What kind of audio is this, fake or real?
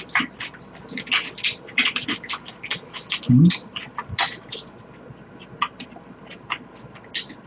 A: real